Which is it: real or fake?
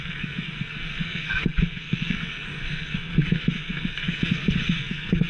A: fake